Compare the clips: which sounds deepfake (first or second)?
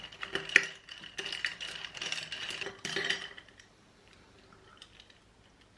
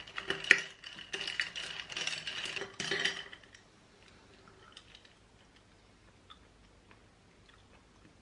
first